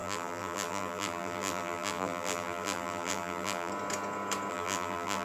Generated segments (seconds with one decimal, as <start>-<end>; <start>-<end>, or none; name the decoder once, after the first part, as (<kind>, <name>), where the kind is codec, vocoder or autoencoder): 0.0-3.7 (vocoder, BigVGAN v2); 4.5-5.2